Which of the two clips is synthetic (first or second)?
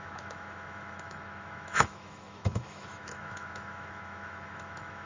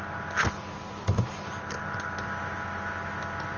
first